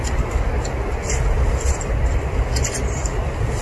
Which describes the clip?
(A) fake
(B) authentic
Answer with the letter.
A